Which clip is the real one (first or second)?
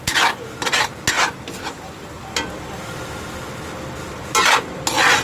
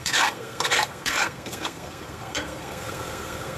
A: first